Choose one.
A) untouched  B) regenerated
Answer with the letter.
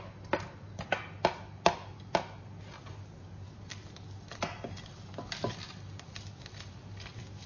A